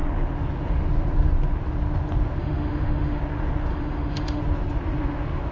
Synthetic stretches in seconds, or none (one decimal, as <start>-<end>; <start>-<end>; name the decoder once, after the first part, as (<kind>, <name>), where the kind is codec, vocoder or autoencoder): 2.4-3.2 (autoencoder, DAC-VAE); 3.7-4.4